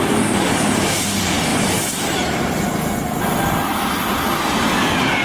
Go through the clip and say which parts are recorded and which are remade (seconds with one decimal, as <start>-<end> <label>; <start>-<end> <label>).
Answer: 0.0-1.5 recorded; 1.5-4.0 remade; 4.0-5.2 recorded